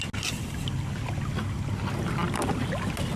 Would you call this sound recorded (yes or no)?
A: yes